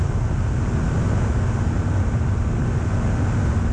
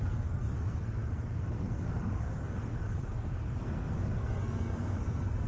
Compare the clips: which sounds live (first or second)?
first